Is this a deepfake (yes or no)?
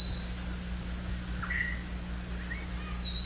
no